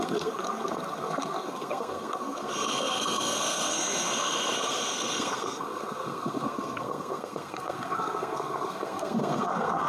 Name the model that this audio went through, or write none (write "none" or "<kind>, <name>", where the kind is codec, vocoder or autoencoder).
codec, SNAC